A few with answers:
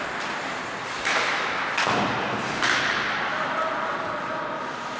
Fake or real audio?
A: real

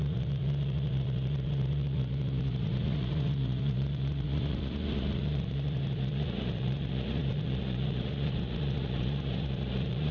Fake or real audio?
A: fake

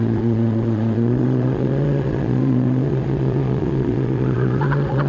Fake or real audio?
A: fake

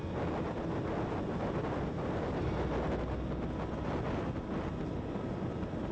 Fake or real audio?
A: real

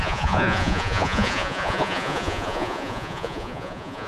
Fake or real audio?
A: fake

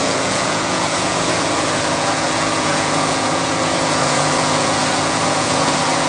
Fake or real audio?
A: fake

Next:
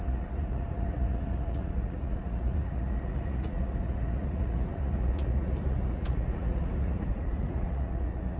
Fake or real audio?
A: fake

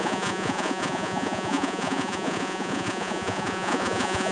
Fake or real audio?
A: fake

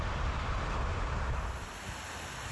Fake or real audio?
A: real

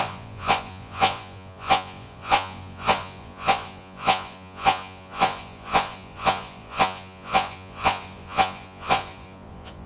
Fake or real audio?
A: fake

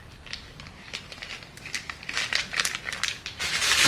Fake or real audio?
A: real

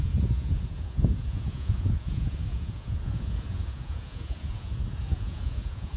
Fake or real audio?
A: fake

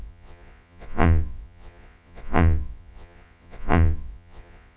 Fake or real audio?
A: fake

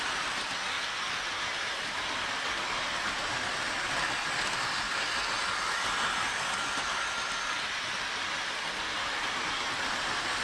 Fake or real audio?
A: real